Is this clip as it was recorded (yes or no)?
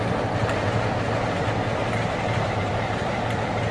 yes